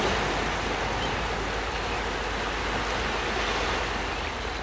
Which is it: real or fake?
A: real